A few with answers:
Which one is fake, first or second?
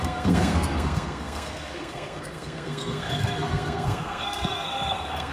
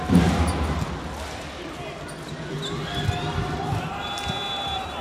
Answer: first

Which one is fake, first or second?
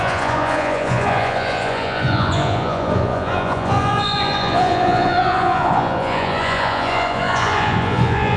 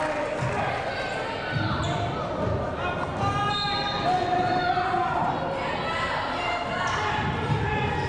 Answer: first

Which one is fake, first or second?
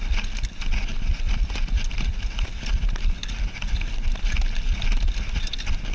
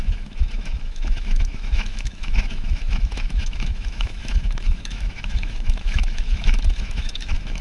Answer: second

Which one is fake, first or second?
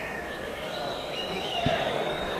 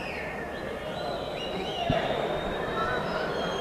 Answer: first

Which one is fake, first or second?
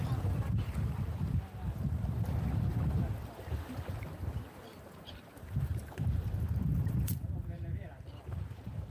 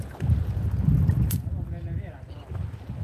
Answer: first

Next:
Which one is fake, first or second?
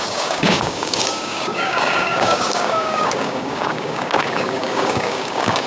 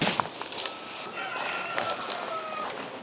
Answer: first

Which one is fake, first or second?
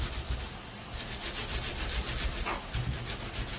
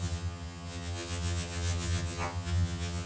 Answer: second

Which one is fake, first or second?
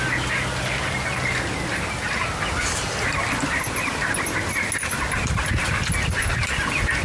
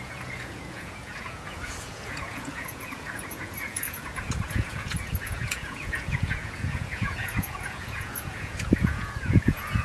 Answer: second